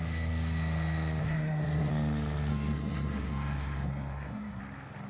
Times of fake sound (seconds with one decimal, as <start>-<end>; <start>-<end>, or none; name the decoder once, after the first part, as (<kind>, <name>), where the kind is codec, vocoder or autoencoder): 1.2-1.9 (codec, SNAC); 2.5-4.6